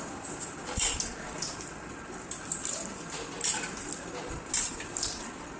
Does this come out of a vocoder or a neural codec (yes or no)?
no